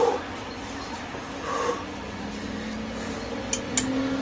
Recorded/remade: recorded